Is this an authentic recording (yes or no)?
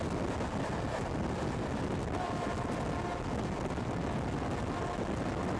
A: yes